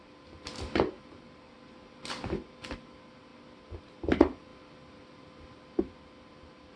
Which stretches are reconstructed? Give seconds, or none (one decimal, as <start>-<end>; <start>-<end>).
none